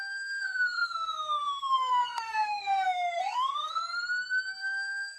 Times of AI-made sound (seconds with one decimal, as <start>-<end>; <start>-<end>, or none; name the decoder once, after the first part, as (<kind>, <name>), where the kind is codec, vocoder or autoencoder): 0.0-3.8 (codec, SNAC); 4.6-5.2